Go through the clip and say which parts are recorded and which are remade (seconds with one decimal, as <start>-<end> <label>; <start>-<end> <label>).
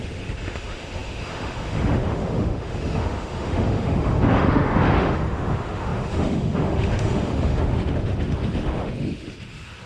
0.0-9.9 remade